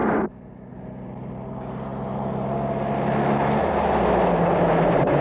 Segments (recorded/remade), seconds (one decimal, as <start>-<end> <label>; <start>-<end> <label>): 0.0-5.2 recorded